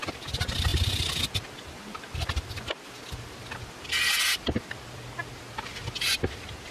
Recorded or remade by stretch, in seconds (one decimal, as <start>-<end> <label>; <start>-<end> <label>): 0.0-6.7 recorded